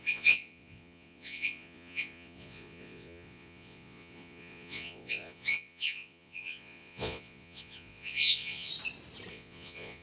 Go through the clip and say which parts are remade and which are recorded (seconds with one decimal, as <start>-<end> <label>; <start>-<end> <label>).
0.0-8.7 remade; 8.7-9.3 recorded; 9.3-10.0 remade